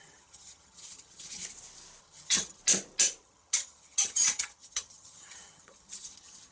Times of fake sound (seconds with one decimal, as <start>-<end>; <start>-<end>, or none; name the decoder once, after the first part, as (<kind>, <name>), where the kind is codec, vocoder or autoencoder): 0.0-1.4 (vocoder, HiFi-GAN); 2.0-2.6; 3.2-6.5